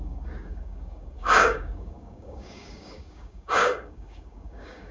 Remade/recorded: remade